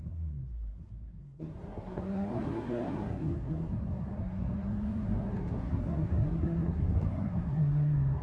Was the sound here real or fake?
fake